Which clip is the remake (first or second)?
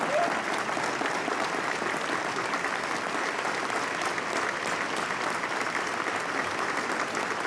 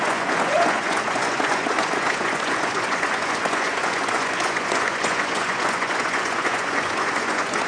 second